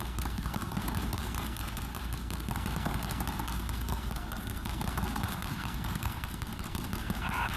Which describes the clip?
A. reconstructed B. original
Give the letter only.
A